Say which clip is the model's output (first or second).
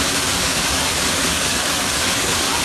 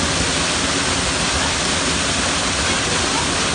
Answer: first